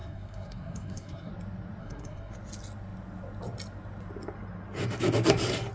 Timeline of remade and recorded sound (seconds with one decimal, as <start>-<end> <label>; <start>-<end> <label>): 0.0-1.3 remade; 1.3-1.8 recorded; 1.8-2.3 remade; 2.3-5.7 recorded